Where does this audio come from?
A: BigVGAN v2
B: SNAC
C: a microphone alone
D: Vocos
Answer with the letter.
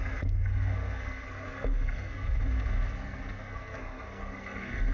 B